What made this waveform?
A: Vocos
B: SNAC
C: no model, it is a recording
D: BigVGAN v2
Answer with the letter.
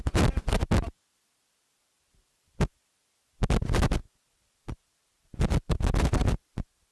C